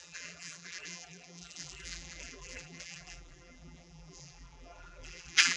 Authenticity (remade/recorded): remade